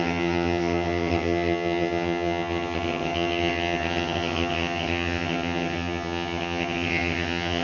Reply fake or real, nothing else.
fake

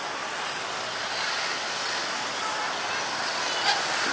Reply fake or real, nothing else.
real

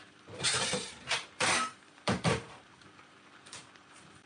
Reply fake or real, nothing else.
fake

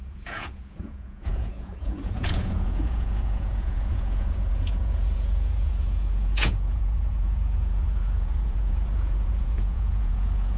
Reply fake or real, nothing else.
fake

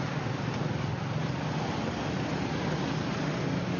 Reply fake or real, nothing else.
real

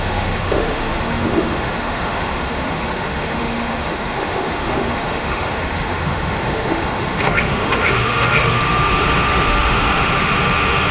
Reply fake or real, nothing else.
fake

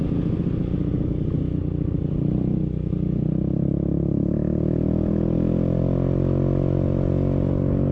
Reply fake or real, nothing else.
real